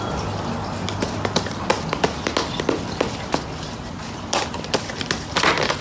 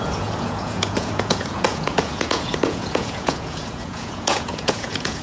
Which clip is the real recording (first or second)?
first